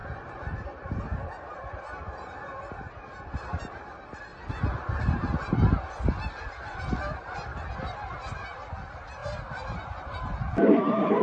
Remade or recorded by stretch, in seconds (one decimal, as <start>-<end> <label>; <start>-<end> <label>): 0.0-4.3 remade; 4.3-5.0 recorded; 5.0-7.5 remade; 7.5-8.3 recorded; 8.3-11.2 remade